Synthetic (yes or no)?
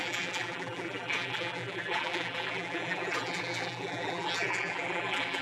yes